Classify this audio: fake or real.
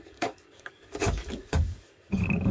fake